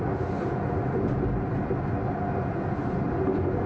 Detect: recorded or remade recorded